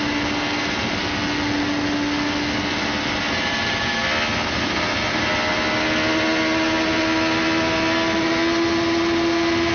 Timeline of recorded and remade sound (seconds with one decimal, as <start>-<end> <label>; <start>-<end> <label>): 0.0-9.7 recorded